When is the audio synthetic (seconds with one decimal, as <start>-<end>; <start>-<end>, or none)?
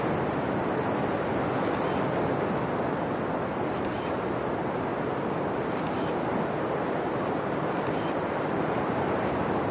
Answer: none